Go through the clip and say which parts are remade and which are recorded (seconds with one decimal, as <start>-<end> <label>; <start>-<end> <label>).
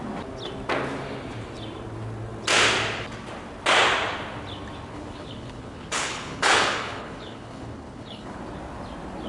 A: 0.0-4.9 recorded; 4.9-8.4 remade; 8.4-9.3 recorded